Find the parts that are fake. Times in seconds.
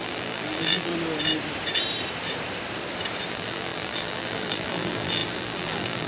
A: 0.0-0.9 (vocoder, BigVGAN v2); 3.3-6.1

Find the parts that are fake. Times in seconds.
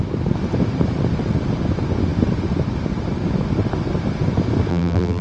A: 4.7-5.2 (vocoder, BigVGAN v2)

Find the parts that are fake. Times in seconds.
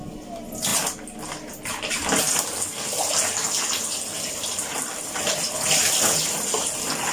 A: 0.0-0.7 (vocoder, BigVGAN v2); 4.3-7.1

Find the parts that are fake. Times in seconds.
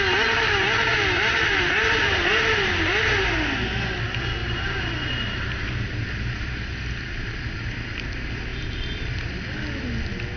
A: 0.9-3.0 (vocoder, BigVGAN v2); 4.4-6.6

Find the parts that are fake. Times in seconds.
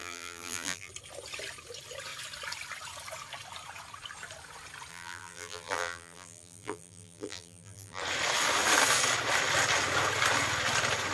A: 0.0-0.9 (vocoder, BigVGAN v2); 4.9-8.0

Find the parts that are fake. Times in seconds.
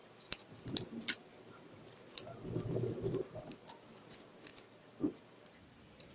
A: 0.0-3.7 (vocoder, BigVGAN v2); 4.5-6.1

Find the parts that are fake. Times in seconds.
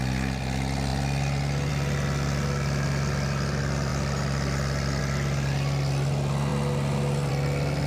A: none